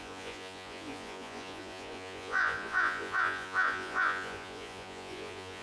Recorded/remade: remade